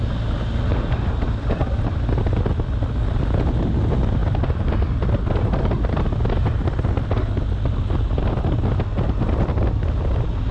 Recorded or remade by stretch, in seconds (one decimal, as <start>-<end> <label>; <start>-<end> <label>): 0.0-10.5 recorded